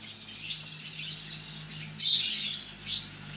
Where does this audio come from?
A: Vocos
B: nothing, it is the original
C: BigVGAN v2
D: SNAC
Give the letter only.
B